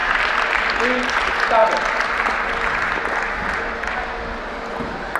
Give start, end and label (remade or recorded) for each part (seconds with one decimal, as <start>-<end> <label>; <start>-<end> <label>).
0.0-5.2 recorded